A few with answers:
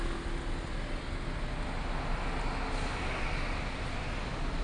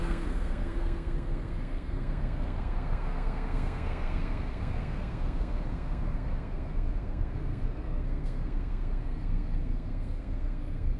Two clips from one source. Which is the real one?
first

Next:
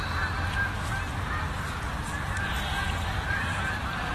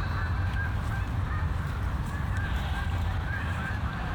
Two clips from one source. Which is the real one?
first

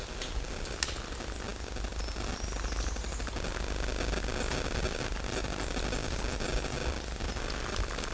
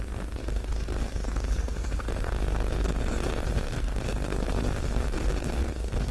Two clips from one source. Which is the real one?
first